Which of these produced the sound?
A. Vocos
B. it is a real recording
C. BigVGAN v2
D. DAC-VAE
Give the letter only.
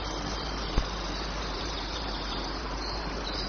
C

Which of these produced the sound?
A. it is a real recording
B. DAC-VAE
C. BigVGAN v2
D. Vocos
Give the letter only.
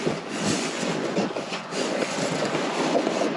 D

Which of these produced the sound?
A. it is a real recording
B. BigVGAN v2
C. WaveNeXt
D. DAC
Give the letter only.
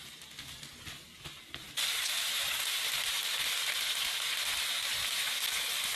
A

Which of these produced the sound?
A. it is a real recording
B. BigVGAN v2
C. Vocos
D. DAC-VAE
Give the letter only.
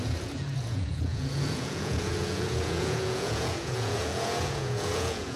C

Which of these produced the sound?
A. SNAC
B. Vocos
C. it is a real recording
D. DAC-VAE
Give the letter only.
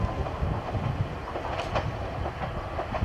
C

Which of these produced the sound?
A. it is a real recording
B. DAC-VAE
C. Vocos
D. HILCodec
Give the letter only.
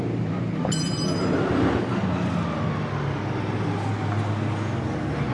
A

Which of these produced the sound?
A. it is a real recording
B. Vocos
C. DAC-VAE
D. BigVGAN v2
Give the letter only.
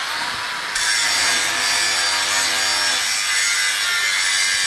A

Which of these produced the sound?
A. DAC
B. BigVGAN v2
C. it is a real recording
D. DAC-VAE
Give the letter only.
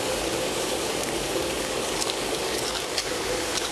A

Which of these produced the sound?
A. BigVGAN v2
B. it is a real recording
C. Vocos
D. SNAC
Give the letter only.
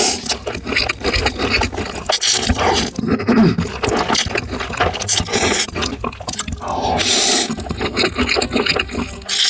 B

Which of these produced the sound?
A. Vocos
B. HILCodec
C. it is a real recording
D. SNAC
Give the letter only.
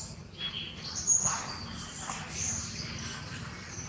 C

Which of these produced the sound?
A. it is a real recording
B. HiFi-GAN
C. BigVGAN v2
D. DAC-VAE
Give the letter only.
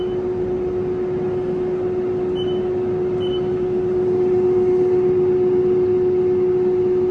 A